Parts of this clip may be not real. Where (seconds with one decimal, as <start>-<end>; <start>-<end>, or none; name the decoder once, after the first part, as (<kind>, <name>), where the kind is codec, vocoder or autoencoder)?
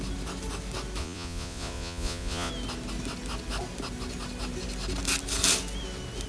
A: 1.0-2.5 (vocoder, Vocos)